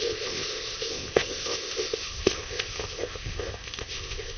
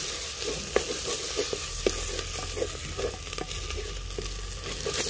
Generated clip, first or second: first